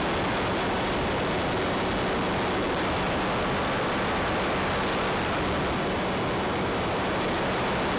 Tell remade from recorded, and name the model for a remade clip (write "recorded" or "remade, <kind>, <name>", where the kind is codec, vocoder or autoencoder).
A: recorded